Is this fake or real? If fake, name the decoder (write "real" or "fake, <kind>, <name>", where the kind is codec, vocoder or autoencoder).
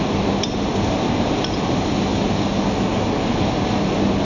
real